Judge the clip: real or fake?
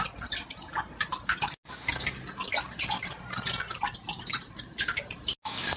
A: real